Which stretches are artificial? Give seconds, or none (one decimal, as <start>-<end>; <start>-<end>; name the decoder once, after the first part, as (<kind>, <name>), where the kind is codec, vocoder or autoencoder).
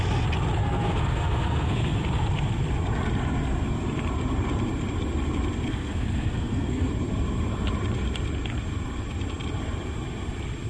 0.6-1.9 (codec, SNAC); 5.7-6.9